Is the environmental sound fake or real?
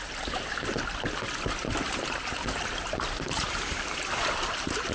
real